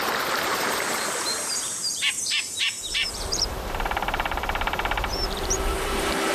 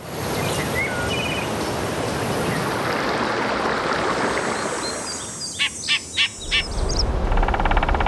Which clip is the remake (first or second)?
first